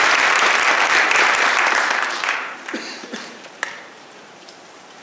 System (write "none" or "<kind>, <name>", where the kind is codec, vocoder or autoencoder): vocoder, BigVGAN v2